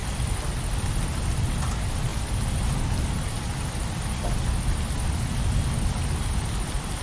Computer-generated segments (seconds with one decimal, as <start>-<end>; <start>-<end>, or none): 0.0-1.4

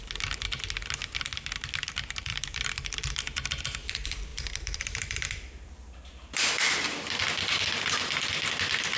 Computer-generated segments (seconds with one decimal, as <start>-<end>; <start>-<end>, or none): 2.3-3.2; 4.3-7.2